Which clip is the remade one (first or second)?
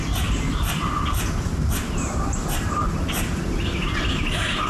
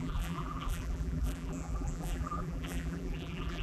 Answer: second